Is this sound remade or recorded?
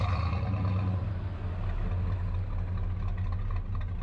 recorded